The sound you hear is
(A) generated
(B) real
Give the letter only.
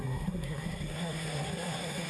A